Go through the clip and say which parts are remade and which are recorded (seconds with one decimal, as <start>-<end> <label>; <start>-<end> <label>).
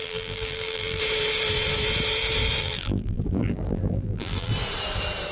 0.0-1.0 remade; 1.0-2.6 recorded; 2.6-4.5 remade; 4.5-5.3 recorded